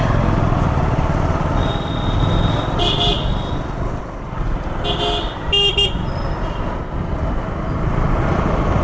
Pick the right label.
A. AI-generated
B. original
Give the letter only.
B